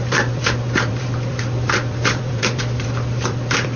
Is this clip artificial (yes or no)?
yes